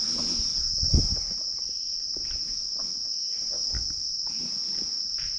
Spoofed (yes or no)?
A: no